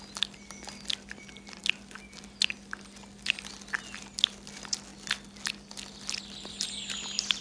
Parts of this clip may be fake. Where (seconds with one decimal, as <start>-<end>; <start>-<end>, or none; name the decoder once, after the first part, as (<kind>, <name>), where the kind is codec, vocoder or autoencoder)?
none